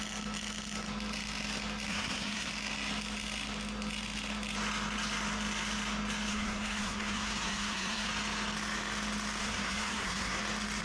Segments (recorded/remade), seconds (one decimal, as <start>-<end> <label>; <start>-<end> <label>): 0.0-1.9 recorded; 1.9-2.5 remade; 2.5-6.3 recorded; 6.3-8.1 remade; 8.1-9.4 recorded; 9.4-10.4 remade; 10.4-10.8 recorded